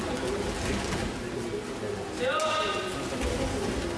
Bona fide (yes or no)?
yes